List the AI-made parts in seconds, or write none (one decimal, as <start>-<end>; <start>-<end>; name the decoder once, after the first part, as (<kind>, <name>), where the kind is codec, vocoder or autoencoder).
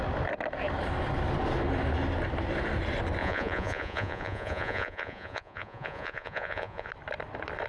3.2-6.9 (vocoder, Vocos)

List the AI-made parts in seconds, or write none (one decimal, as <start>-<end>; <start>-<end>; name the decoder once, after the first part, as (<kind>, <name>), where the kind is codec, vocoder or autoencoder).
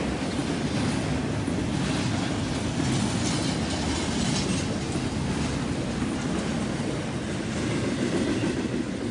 none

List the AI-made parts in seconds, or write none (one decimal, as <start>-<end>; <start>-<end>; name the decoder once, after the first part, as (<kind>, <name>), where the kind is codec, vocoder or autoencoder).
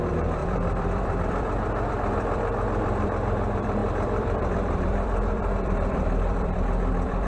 0.0-7.3 (vocoder, BigVGAN v2)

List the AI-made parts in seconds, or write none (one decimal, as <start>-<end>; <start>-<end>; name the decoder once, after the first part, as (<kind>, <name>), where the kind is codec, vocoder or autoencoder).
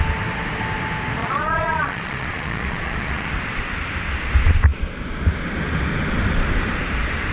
1.2-3.3 (vocoder, Vocos)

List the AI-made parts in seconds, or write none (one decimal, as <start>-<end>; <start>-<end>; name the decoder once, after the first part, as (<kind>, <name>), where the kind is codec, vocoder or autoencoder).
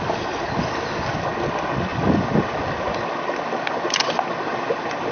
none